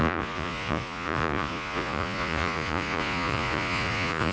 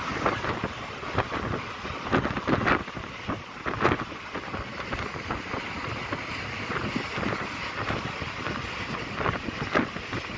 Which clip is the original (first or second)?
second